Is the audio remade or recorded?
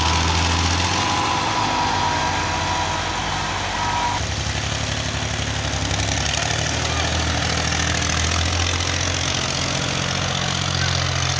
recorded